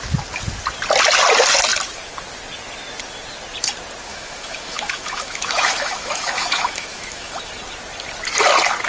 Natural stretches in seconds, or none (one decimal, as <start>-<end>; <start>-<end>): 0.0-4.1; 7.5-8.9